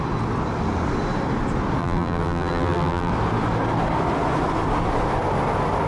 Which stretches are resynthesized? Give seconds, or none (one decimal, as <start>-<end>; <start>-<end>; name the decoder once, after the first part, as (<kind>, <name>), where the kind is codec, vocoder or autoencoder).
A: 1.8-3.1 (vocoder, BigVGAN v2)